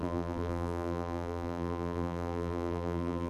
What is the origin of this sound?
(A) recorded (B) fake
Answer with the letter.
B